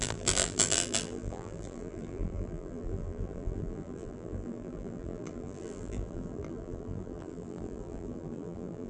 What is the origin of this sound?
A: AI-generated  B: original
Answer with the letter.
A